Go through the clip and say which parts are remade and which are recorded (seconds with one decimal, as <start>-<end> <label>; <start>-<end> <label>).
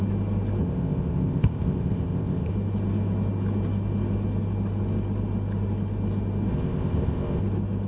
0.0-0.6 recorded; 0.6-2.5 remade; 2.5-6.5 recorded; 6.5-7.4 remade; 7.4-7.9 recorded